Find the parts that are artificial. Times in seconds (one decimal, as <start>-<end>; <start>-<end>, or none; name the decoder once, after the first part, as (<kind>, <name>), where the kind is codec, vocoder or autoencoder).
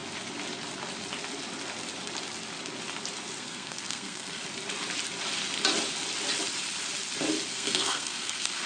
3.4-4.4 (codec, SNAC); 7.5-8.7